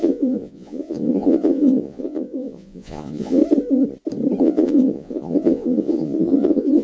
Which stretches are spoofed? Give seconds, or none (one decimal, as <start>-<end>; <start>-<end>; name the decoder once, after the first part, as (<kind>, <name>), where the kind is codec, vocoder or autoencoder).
0.0-3.4 (vocoder, Vocos); 4.4-6.8